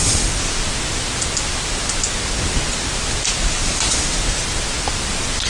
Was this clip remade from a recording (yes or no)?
no